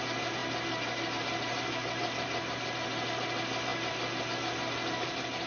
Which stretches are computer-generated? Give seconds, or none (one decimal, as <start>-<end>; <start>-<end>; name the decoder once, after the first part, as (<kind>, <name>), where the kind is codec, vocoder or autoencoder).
none